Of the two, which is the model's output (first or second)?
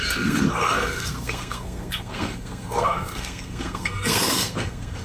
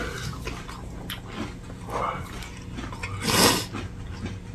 first